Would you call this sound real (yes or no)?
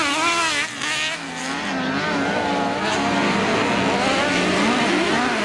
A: yes